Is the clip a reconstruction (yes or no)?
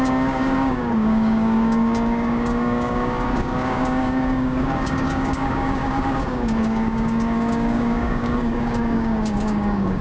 yes